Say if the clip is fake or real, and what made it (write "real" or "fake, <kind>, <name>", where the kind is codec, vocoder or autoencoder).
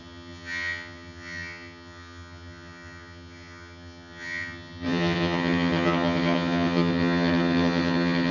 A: fake, vocoder, HiFi-GAN